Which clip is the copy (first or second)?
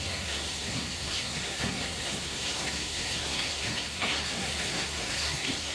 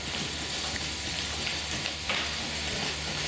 first